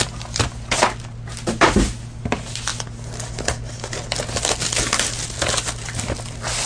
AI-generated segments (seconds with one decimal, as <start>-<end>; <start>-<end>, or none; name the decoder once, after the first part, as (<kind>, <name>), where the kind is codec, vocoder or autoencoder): none